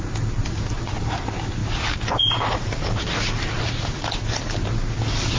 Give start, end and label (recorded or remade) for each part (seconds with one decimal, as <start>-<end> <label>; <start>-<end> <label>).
0.0-5.4 recorded